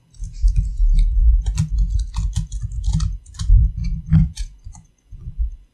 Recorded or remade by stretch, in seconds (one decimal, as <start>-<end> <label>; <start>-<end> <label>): 0.0-3.8 recorded; 3.8-5.7 remade